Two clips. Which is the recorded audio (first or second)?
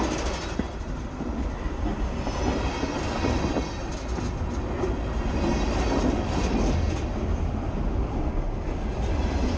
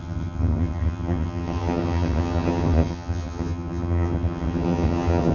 first